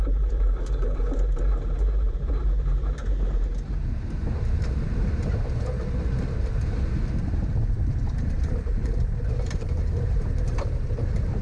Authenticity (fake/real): fake